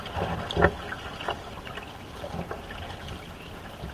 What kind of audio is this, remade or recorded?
recorded